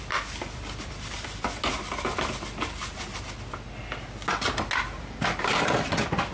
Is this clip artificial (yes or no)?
no